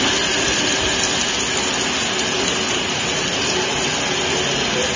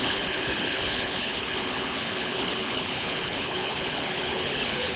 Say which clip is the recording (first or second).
first